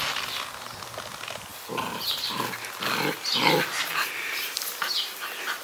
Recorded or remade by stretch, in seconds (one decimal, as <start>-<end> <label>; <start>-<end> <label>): 0.0-5.6 recorded